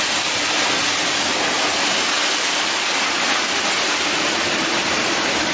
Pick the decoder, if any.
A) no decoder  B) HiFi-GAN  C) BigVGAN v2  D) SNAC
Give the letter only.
A